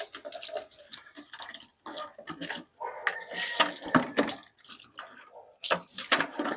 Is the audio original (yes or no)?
yes